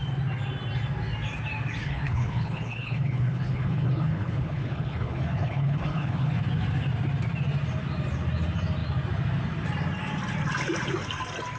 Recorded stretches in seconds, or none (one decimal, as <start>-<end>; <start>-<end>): 0.0-1.8; 6.3-11.6